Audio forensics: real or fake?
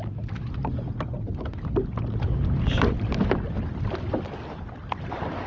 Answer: real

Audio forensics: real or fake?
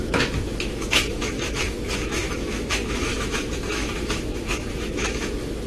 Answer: fake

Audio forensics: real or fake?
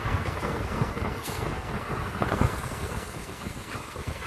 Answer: fake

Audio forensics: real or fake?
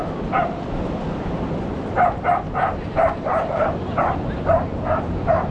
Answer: fake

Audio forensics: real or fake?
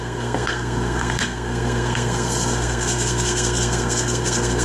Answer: fake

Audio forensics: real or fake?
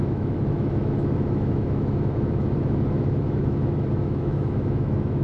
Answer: fake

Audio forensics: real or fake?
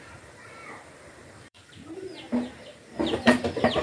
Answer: fake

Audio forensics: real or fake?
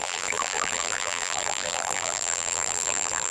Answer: fake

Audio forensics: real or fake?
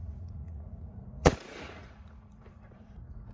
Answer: fake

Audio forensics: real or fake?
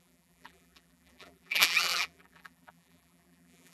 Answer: fake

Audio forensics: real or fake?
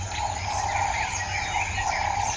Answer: real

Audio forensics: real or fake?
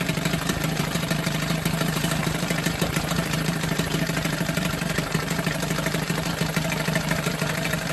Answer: fake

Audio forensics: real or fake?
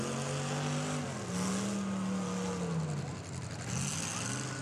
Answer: real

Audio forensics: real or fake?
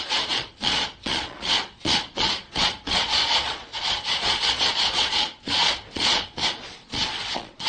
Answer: fake